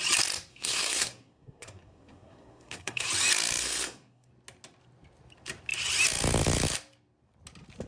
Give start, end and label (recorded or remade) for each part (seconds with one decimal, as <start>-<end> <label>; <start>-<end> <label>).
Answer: 0.0-0.5 recorded; 0.5-3.1 remade; 3.1-3.6 recorded; 3.6-4.3 remade; 4.3-7.9 recorded